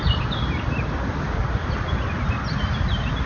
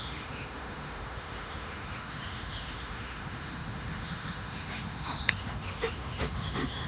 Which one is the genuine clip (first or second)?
first